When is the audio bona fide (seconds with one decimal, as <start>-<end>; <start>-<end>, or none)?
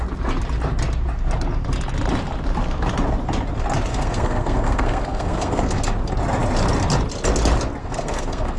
0.0-3.9; 5.8-7.8